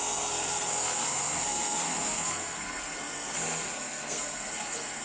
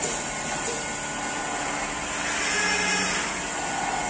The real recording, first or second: second